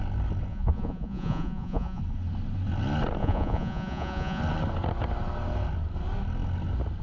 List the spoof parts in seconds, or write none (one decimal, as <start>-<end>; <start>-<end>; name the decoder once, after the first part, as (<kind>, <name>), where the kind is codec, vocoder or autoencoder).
0.5-2.0 (vocoder, Vocos); 3.2-4.4